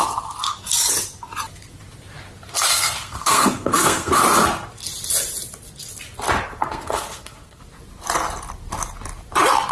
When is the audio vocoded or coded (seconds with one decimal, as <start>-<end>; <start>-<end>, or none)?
2.7-4.2; 6.6-7.6